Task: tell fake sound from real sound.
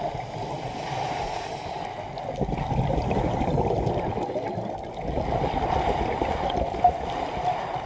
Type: real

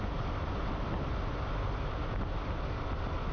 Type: real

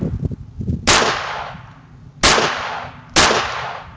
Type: real